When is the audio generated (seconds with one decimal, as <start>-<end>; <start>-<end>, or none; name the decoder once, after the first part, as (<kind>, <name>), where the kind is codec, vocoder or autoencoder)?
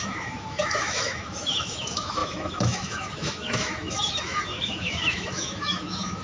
0.0-6.2 (autoencoder, DAC-VAE)